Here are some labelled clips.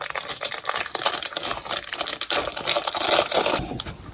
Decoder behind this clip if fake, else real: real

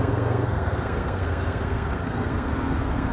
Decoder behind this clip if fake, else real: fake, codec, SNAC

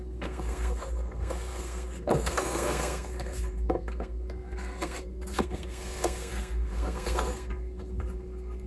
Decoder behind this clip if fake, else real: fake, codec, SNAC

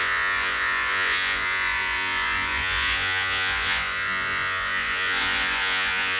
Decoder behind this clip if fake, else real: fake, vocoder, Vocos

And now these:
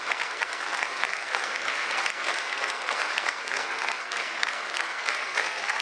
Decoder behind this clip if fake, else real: fake, codec, SNAC